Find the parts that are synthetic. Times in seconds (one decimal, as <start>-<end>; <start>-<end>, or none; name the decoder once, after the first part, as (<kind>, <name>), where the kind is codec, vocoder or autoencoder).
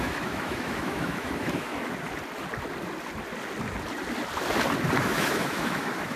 0.0-1.7 (autoencoder, DAC-VAE); 5.0-6.2